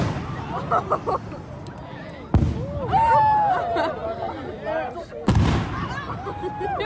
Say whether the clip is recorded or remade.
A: recorded